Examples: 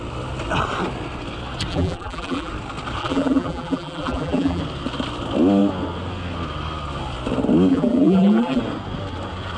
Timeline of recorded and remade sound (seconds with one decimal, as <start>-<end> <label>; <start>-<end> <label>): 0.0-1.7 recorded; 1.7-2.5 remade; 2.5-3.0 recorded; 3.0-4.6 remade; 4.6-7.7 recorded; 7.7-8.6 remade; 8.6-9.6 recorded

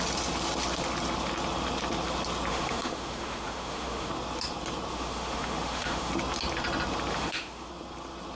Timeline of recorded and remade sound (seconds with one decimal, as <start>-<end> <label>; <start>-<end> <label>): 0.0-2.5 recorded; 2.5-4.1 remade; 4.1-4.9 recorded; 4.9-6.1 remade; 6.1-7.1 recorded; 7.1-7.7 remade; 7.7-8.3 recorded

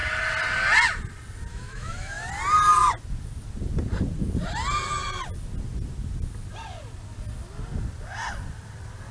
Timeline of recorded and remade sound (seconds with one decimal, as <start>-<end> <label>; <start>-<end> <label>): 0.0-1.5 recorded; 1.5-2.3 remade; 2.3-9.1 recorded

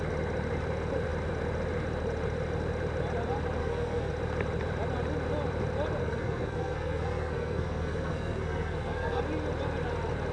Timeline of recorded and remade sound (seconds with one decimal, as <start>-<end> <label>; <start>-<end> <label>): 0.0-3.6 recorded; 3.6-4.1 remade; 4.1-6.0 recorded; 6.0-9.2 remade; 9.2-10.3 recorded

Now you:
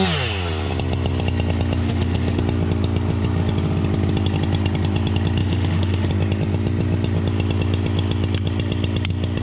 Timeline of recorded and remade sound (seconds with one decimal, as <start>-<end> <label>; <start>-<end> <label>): 0.0-1.8 recorded; 1.8-2.4 remade; 2.4-5.4 recorded; 5.4-6.1 remade; 6.1-9.4 recorded

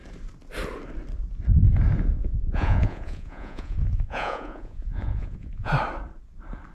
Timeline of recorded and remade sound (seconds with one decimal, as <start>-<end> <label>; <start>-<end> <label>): 0.0-2.2 recorded; 2.2-5.7 remade; 5.7-6.7 recorded

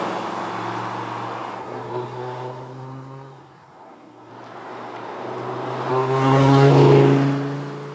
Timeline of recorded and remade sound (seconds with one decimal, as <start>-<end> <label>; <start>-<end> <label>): 0.0-1.6 recorded; 1.6-4.3 remade; 4.3-5.9 recorded; 5.9-6.7 remade; 6.7-7.9 recorded

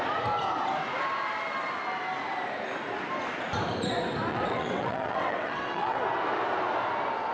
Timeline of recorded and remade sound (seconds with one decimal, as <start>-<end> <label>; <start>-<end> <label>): 0.0-4.3 recorded; 4.3-6.0 remade; 6.0-7.3 recorded